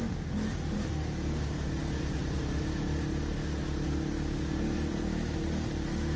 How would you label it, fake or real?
real